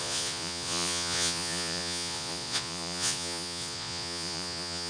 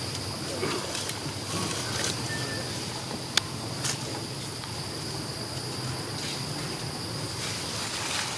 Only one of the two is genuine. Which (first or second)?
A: second